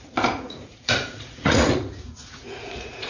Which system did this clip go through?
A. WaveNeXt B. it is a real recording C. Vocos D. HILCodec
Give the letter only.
C